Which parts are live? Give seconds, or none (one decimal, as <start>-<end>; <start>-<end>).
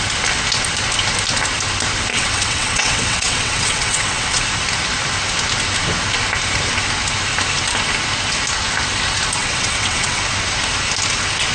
0.0-2.1; 4.4-9.4; 10.2-11.5